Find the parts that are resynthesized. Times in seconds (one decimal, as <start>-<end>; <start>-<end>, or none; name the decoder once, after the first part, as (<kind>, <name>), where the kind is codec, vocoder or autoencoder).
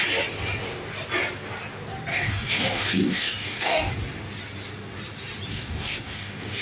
2.1-3.9 (codec, DAC); 5.5-6.6